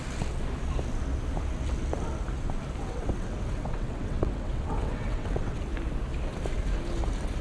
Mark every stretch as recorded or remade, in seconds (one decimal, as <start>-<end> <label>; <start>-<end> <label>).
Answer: 0.0-2.8 recorded; 2.8-5.6 remade; 5.6-7.4 recorded